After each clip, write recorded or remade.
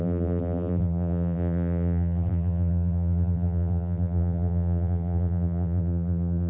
remade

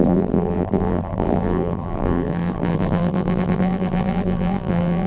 remade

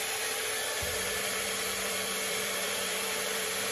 remade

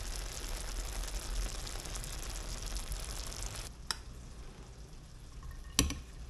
recorded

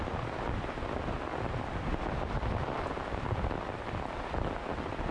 remade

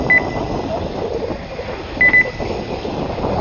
recorded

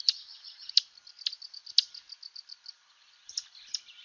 recorded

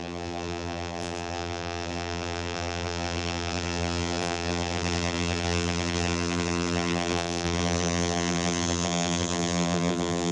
remade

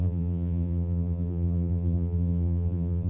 remade